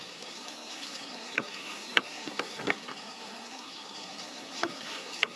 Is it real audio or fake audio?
fake